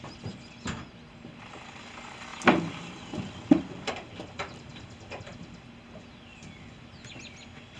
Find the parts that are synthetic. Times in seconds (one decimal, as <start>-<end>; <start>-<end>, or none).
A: none